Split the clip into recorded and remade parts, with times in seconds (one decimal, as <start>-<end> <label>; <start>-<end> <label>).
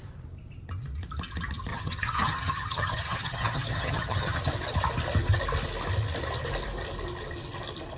0.0-1.7 recorded; 1.7-4.4 remade; 4.4-8.0 recorded